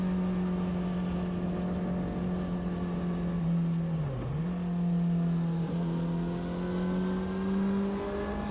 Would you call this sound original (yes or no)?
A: yes